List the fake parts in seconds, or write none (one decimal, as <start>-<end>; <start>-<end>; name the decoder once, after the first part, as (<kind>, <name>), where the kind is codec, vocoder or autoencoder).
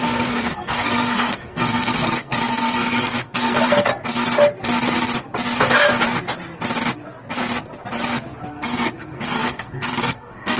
0.0-3.9 (codec, SNAC); 8.5-10.6